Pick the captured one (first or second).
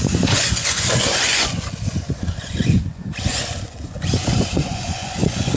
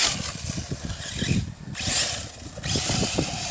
second